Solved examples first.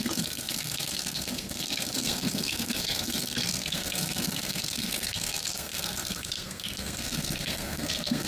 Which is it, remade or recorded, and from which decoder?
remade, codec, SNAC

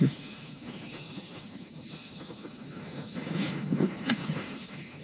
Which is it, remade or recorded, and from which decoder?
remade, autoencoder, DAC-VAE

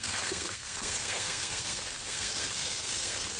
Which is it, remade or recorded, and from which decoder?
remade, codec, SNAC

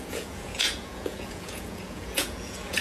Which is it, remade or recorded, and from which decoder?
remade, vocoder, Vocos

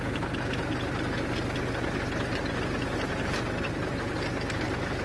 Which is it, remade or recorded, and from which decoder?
recorded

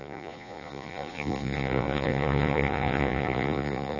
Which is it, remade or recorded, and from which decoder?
remade, vocoder, Vocos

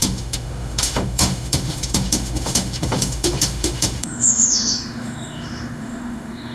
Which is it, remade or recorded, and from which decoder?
remade, autoencoder, DAC-VAE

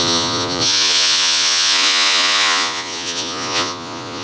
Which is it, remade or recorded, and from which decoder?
remade, vocoder, Vocos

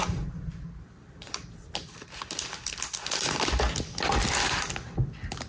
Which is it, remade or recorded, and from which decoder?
recorded